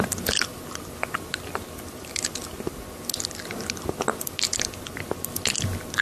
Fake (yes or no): no